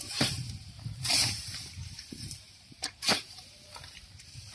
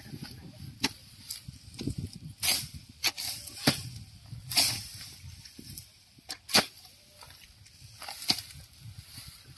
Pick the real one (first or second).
second